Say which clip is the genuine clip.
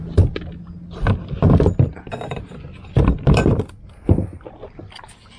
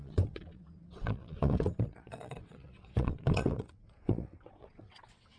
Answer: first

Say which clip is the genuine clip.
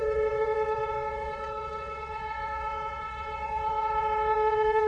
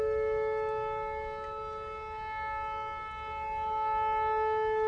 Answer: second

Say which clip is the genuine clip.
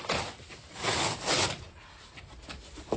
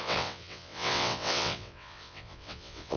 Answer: first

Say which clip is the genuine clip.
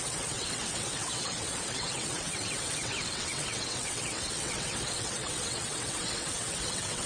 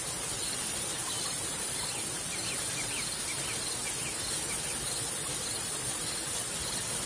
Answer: second